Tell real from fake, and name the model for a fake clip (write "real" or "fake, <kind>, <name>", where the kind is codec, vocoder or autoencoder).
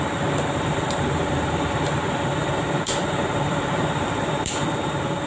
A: fake, vocoder, BigVGAN v2